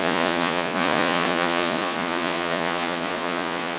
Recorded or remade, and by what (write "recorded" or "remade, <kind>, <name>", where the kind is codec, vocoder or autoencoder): remade, vocoder, Vocos